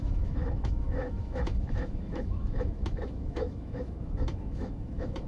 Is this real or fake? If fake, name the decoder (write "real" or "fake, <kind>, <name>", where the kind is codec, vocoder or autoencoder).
fake, autoencoder, DAC-VAE